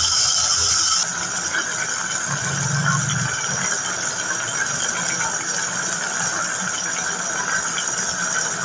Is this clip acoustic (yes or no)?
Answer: yes